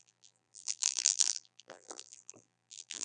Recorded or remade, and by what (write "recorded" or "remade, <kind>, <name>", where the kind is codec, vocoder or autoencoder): remade, vocoder, BigVGAN v2